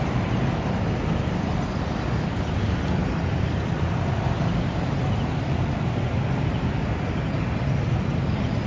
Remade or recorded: recorded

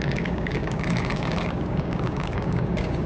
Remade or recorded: remade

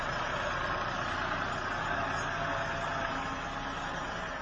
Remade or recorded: recorded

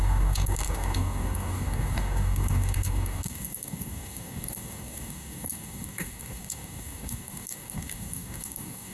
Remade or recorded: remade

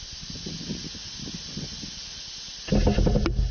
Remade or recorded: recorded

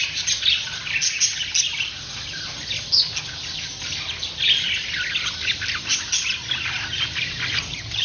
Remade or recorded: recorded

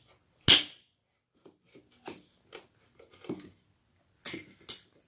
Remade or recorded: recorded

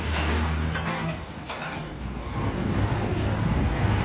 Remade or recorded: remade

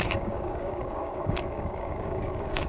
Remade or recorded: remade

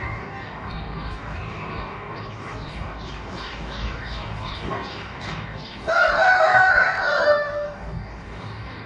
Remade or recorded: remade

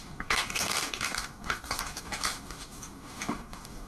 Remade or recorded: remade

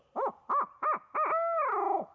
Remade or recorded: recorded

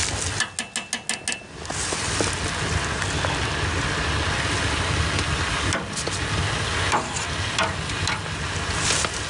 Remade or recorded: recorded